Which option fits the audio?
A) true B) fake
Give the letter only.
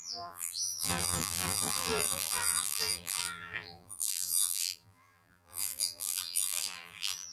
B